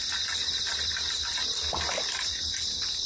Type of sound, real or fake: real